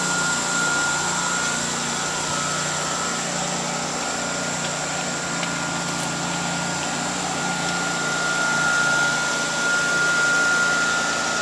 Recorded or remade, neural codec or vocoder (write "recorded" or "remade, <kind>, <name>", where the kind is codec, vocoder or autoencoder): recorded